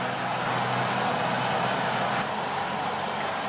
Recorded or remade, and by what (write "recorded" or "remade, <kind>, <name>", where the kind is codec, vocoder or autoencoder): recorded